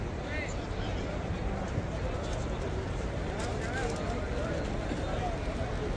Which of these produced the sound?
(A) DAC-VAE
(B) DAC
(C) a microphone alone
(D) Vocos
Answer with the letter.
C